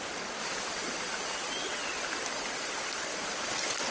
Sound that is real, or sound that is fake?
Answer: real